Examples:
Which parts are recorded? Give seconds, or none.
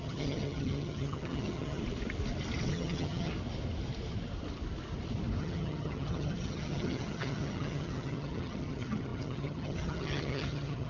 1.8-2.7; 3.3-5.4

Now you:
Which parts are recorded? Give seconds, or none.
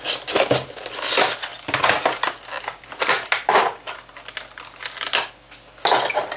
0.0-6.4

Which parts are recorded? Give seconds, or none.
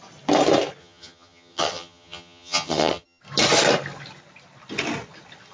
0.0-0.8; 3.2-5.5